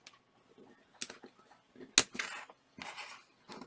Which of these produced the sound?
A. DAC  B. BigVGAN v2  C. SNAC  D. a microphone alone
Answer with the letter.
D